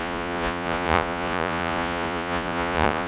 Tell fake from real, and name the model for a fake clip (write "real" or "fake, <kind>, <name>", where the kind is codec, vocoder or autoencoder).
fake, vocoder, Vocos